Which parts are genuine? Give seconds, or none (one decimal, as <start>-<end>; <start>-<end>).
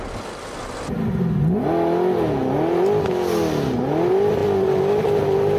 0.0-5.6